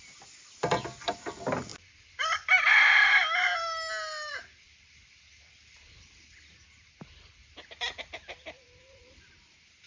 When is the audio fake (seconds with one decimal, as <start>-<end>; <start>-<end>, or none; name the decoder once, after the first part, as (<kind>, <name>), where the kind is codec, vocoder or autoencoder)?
0.0-3.5 (vocoder, BigVGAN v2); 4.3-9.9